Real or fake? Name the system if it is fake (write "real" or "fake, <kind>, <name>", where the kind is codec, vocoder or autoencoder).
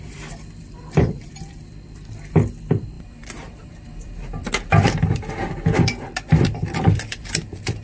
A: fake, vocoder, BigVGAN v2